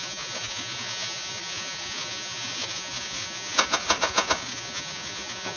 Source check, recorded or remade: remade